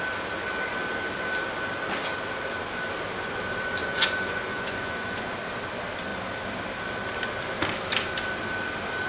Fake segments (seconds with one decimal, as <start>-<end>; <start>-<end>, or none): 3.8-5.3